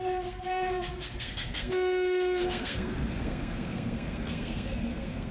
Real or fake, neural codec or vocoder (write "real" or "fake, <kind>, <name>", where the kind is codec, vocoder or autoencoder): fake, codec, SNAC